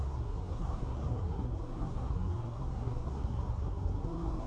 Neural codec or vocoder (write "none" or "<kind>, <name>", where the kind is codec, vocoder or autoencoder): codec, SNAC